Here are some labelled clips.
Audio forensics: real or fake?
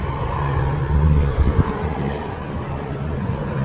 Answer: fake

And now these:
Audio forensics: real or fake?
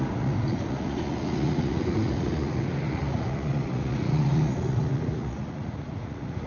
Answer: fake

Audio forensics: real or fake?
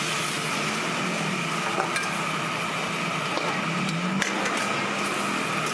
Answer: real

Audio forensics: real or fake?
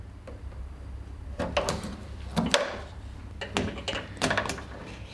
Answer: real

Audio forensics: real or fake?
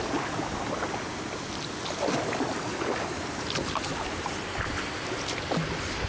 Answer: real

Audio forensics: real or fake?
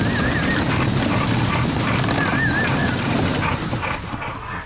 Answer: real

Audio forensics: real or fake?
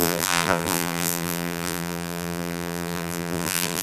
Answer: fake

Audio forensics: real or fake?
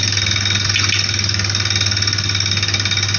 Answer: real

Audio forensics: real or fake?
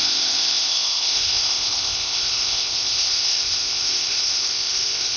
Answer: fake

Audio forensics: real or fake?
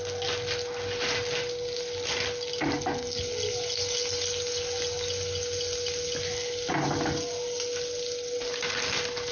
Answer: real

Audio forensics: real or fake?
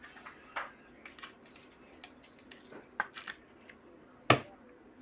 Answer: real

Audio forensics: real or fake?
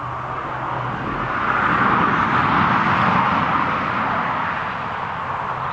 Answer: real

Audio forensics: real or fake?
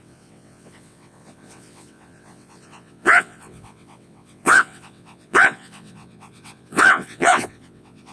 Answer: fake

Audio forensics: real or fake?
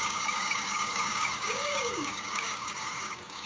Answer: fake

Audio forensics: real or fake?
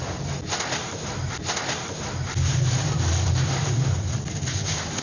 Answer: real